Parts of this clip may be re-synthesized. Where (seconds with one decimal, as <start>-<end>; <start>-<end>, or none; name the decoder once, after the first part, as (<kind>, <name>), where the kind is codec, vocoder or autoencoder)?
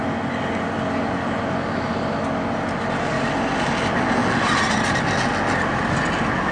none